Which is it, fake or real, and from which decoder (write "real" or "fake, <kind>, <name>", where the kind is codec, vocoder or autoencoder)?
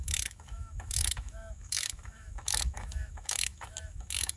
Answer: fake, autoencoder, DAC-VAE